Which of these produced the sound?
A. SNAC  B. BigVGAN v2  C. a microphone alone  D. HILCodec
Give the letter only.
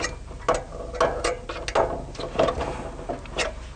C